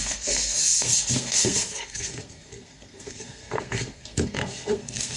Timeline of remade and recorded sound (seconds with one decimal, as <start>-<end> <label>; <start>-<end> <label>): 0.0-5.2 remade